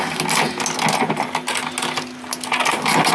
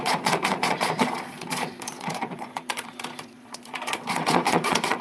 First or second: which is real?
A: first